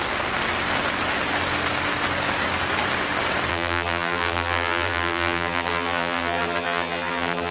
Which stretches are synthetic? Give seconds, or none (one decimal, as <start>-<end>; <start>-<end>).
3.5-7.5